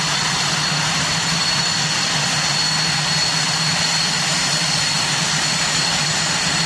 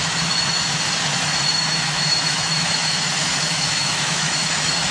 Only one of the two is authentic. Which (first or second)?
first